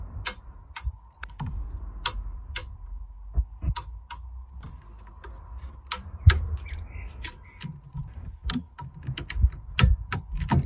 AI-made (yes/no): no